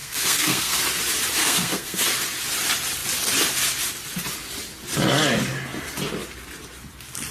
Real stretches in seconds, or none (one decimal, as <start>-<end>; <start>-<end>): 0.8-1.4; 2.1-7.3